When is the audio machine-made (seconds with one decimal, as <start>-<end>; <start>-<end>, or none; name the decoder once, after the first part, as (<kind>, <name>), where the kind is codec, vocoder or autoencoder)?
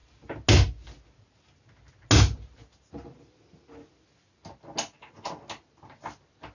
none